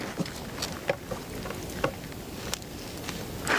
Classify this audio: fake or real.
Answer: real